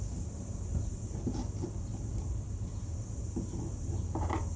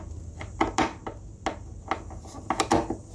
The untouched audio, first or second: second